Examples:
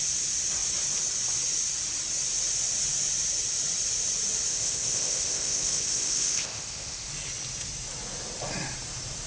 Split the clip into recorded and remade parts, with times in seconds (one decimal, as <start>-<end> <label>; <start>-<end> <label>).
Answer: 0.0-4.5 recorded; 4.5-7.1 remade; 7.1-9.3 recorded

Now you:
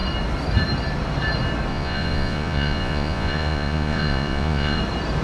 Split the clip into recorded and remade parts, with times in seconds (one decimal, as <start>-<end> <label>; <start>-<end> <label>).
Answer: 0.0-1.7 recorded; 1.7-4.8 remade; 4.8-5.2 recorded

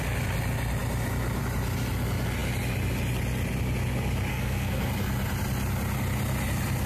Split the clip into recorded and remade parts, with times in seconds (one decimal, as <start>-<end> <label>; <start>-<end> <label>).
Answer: 0.0-4.3 recorded; 4.3-4.9 remade; 4.9-6.9 recorded

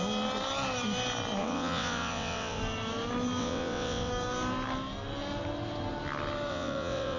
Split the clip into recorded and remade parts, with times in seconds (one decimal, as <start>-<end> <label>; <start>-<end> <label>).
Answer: 0.0-1.4 recorded; 1.4-2.6 remade; 2.6-3.4 recorded; 3.4-4.1 remade; 4.1-6.5 recorded; 6.5-7.2 remade